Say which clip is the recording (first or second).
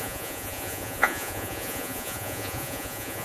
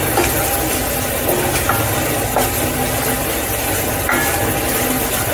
second